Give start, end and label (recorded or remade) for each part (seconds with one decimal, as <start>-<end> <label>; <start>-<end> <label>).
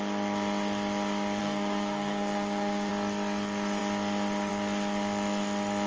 0.0-1.4 recorded; 1.4-2.9 remade; 2.9-5.9 recorded